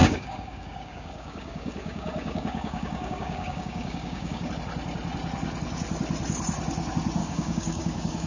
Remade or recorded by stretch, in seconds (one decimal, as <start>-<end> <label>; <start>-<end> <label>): 0.0-4.5 remade; 4.5-7.2 recorded; 7.2-8.3 remade